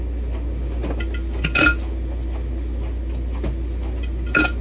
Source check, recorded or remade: recorded